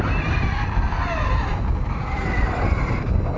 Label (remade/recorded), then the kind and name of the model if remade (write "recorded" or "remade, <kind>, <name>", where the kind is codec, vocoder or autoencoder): recorded